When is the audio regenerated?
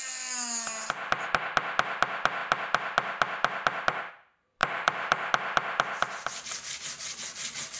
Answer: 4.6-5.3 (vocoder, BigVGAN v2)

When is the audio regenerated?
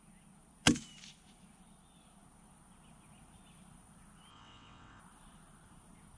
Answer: 4.3-5.0 (vocoder, WaveNeXt)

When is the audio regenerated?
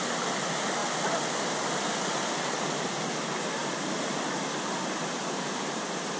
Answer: 3.6-4.3 (vocoder, BigVGAN v2)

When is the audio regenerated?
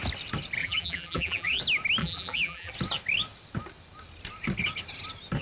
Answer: 0.6-1.6 (vocoder, BigVGAN v2); 2.0-2.7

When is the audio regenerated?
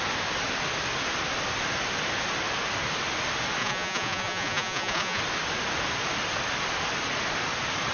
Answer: 3.6-5.2 (vocoder, Vocos)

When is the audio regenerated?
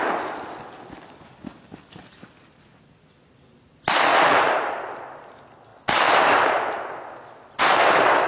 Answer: 4.1-4.7 (vocoder, Vocos)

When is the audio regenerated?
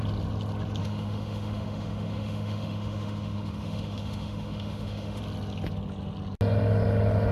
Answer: 0.8-5.2 (autoencoder, DAC-VAE)